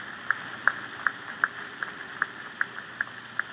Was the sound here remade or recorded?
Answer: recorded